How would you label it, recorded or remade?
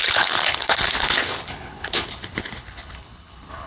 remade